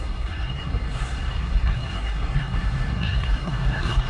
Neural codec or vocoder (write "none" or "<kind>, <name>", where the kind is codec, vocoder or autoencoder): codec, SNAC